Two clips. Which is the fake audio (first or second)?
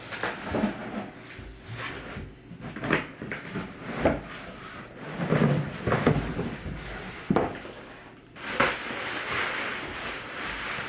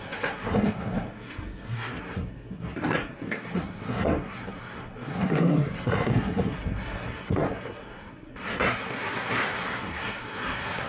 second